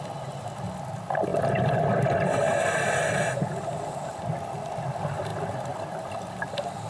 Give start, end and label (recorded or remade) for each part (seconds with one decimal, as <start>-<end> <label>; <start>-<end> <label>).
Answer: 0.0-6.9 recorded